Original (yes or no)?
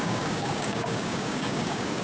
no